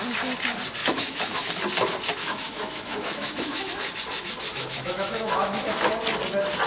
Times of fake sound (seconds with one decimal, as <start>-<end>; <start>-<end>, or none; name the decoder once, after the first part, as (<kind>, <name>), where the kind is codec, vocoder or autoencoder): 0.8-1.5 (autoencoder, DAC-VAE); 2.2-3.7; 4.5-5.8